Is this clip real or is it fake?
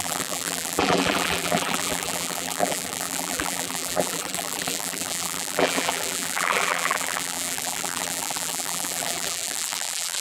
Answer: fake